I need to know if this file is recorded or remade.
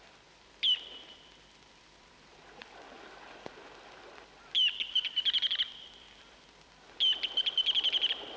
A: remade